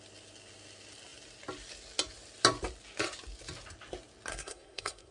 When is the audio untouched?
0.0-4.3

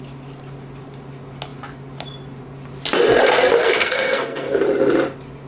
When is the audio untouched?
0.0-3.6; 4.6-5.5

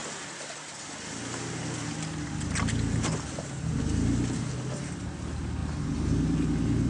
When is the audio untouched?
0.0-6.9

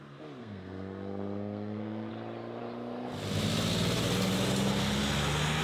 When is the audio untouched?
0.0-0.4; 2.1-5.6